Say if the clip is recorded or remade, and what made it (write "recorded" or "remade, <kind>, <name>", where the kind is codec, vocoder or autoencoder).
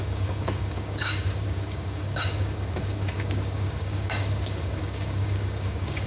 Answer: remade, codec, DAC